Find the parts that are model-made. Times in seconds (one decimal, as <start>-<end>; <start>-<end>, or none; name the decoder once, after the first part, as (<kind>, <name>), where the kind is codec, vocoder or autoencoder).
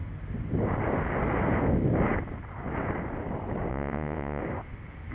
3.7-4.4 (vocoder, Vocos)